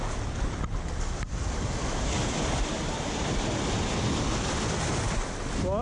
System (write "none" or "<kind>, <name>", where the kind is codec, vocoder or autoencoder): none